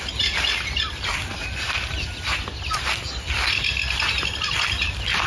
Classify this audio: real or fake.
real